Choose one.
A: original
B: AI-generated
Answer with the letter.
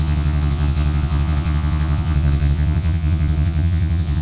B